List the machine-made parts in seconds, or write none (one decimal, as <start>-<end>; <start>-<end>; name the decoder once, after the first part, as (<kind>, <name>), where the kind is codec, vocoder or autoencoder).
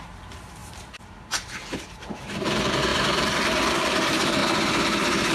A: 0.0-4.4 (vocoder, BigVGAN v2)